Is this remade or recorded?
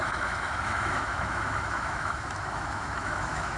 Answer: remade